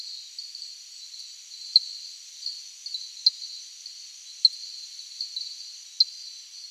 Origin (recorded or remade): recorded